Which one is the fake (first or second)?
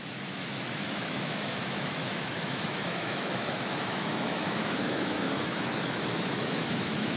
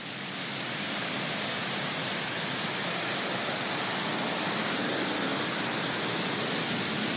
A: first